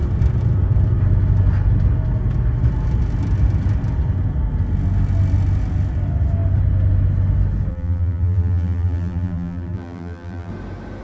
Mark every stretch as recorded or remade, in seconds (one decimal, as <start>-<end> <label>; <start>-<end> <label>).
0.0-7.7 recorded; 7.7-10.5 remade; 10.5-11.0 recorded

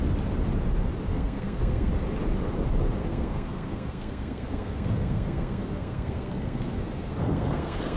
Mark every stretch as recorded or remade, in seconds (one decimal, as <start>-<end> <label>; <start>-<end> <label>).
0.0-1.1 recorded; 1.1-1.9 remade; 1.9-3.0 recorded; 3.0-8.0 remade

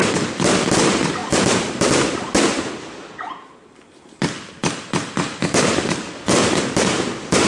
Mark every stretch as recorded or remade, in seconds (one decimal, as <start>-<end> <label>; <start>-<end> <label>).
0.0-7.5 recorded

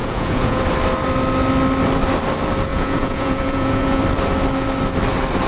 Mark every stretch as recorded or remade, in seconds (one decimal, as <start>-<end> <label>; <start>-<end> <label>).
0.0-0.6 remade; 0.6-2.7 recorded; 2.7-4.0 remade; 4.0-5.5 recorded

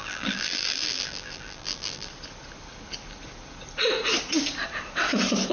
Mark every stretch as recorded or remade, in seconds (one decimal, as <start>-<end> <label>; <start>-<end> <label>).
0.0-2.1 remade; 2.1-5.5 recorded

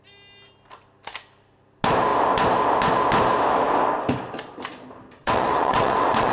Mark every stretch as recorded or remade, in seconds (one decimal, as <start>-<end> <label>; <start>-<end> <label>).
0.0-5.2 recorded; 5.2-6.3 remade

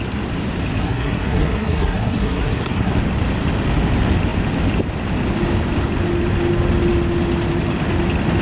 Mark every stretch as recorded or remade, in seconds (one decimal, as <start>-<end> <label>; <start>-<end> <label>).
0.0-0.8 recorded; 0.8-2.9 remade; 2.9-8.4 recorded

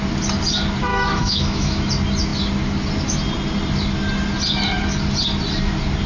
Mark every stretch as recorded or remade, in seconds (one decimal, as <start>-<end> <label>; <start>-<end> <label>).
0.0-0.9 recorded; 0.9-1.9 remade; 1.9-6.1 recorded